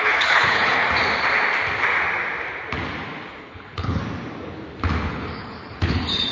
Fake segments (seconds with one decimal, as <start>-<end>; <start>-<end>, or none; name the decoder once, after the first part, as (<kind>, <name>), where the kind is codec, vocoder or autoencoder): 0.0-0.8 (codec, HILCodec); 3.4-4.0; 5.1-6.3